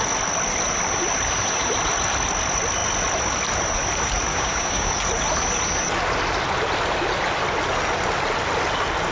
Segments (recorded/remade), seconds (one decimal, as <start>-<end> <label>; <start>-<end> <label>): 0.0-4.3 recorded; 4.3-4.9 remade; 4.9-9.1 recorded